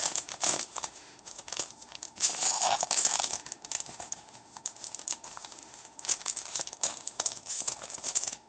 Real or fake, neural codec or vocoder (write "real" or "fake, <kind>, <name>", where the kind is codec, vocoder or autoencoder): fake, autoencoder, DAC-VAE